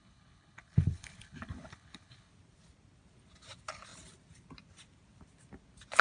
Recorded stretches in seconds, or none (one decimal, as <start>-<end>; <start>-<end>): 2.3-6.0